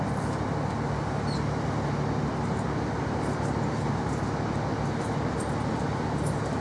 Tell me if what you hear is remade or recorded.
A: recorded